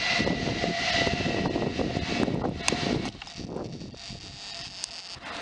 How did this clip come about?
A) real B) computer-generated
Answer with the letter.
A